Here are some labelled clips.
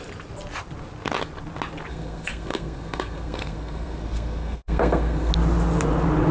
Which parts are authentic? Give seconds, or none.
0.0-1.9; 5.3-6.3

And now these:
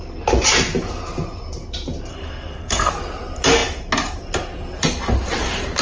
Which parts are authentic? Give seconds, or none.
0.0-2.1; 2.9-5.8

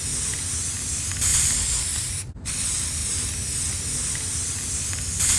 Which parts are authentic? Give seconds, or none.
0.0-5.4

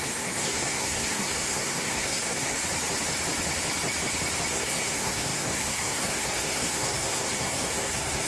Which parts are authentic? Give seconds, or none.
2.6-4.5

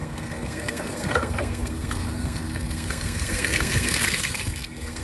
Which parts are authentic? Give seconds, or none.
none

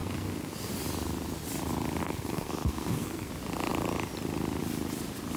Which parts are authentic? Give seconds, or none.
0.7-2.0; 3.3-5.4